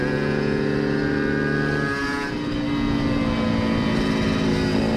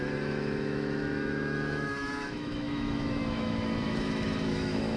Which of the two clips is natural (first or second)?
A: first